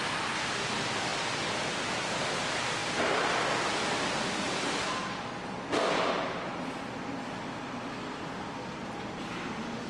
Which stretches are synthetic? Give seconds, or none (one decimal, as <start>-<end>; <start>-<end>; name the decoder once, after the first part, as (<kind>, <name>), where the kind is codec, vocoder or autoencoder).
none